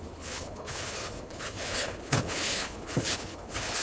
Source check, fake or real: fake